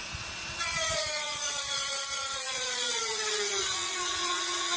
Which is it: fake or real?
fake